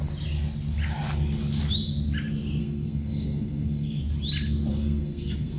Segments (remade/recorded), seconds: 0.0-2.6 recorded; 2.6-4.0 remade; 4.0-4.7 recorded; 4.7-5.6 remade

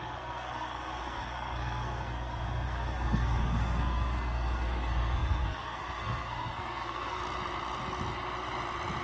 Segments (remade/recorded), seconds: 0.0-7.2 remade; 7.2-9.0 recorded

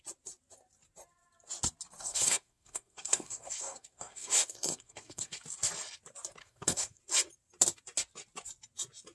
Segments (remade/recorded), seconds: 0.0-2.0 recorded; 2.0-5.4 remade; 5.4-6.4 recorded; 6.4-7.0 remade; 7.0-9.1 recorded

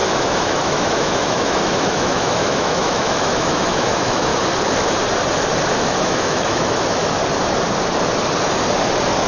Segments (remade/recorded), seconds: 0.0-4.3 remade; 4.3-5.7 recorded; 5.7-7.2 remade; 7.2-9.3 recorded